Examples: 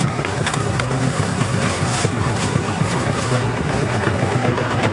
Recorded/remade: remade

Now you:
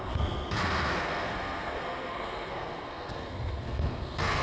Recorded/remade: remade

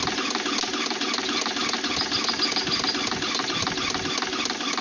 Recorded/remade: recorded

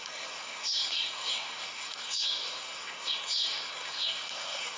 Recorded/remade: remade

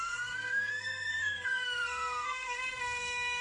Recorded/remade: remade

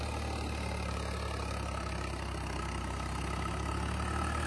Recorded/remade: recorded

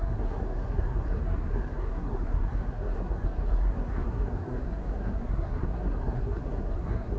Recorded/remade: remade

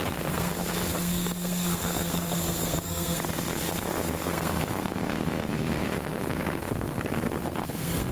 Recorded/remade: remade